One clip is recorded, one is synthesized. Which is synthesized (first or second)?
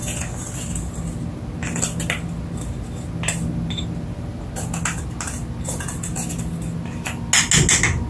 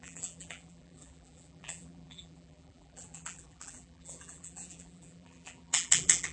second